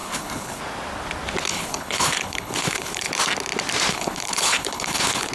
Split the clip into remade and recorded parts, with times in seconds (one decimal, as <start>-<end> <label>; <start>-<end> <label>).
0.0-0.6 remade; 0.6-1.5 recorded; 1.5-3.1 remade; 3.1-3.9 recorded; 3.9-5.3 remade